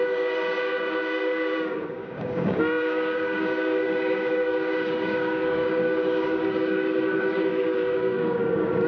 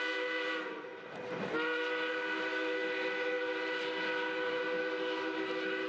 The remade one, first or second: first